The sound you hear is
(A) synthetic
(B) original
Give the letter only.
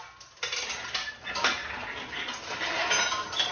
B